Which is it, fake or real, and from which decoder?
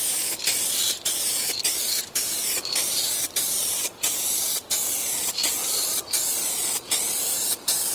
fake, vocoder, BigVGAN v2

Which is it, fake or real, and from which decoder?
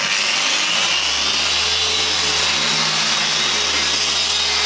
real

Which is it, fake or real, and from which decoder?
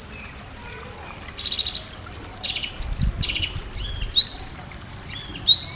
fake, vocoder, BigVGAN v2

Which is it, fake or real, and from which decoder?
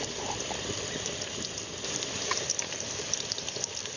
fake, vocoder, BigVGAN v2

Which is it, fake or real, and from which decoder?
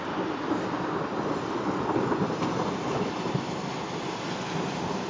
fake, vocoder, BigVGAN v2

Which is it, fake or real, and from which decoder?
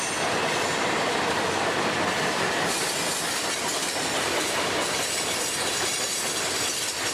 fake, vocoder, BigVGAN v2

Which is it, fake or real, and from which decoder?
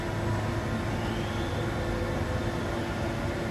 real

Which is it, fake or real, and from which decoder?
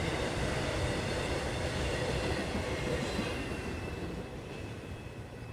fake, vocoder, BigVGAN v2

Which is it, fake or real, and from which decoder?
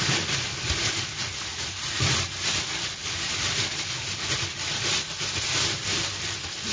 real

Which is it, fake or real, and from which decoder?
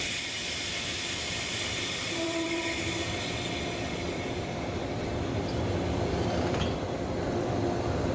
fake, vocoder, BigVGAN v2